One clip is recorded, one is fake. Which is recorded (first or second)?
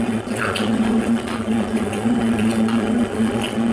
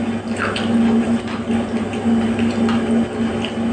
second